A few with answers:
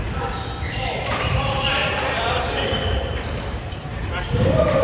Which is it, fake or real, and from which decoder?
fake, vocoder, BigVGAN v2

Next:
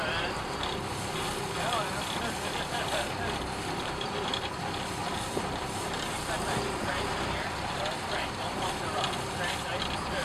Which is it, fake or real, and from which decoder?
fake, vocoder, BigVGAN v2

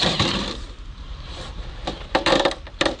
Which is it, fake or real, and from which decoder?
fake, vocoder, BigVGAN v2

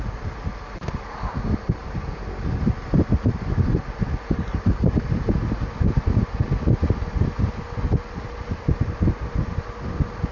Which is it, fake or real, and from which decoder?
real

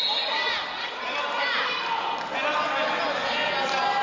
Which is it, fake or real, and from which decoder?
real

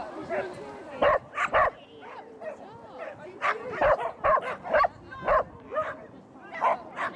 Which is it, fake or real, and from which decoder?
fake, vocoder, BigVGAN v2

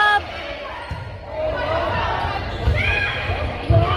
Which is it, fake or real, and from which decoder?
real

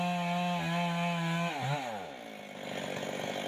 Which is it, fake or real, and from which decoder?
real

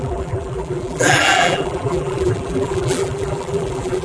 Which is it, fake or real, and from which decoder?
fake, vocoder, BigVGAN v2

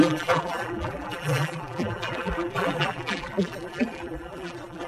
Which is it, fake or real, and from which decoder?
fake, vocoder, BigVGAN v2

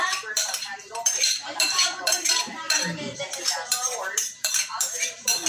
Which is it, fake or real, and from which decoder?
fake, vocoder, BigVGAN v2